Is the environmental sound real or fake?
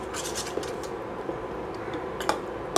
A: real